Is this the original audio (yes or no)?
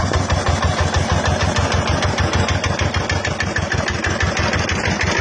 yes